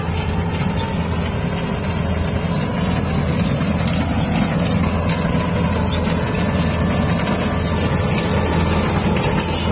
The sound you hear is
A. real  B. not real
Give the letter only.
A